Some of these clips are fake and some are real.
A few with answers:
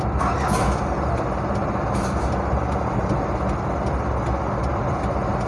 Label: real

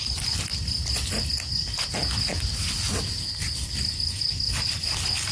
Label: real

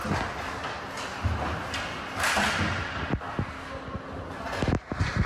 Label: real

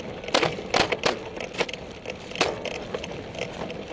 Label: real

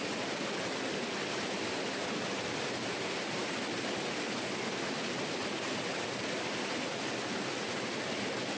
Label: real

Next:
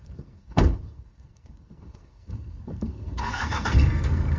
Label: fake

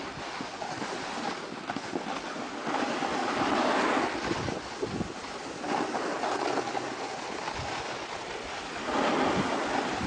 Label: real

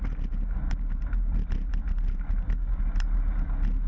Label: real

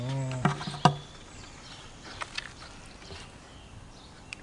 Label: real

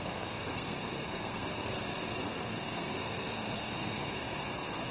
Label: fake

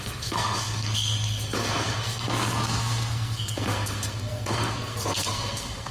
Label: fake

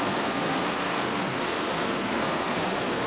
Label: fake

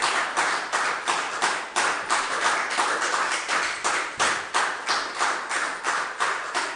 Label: real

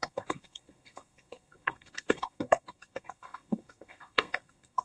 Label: fake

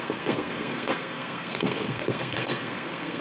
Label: fake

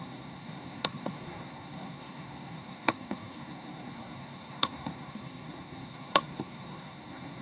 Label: fake